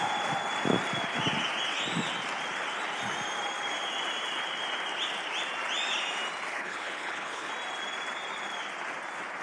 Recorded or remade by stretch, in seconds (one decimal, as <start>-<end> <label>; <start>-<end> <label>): 0.0-6.5 recorded; 6.5-7.5 remade; 7.5-9.4 recorded